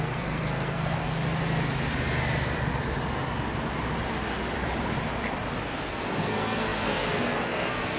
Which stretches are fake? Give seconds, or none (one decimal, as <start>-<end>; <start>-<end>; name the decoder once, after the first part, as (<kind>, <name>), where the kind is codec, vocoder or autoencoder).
0.0-1.1 (codec, SNAC); 5.9-8.0